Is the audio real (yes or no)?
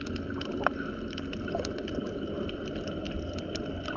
yes